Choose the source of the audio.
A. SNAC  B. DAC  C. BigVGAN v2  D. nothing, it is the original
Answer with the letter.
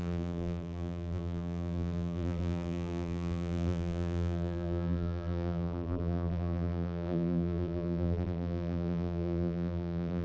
C